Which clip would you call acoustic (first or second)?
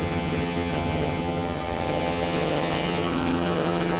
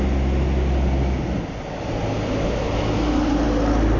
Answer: second